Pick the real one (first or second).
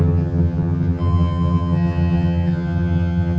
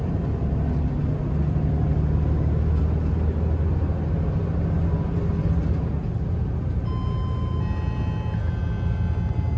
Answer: second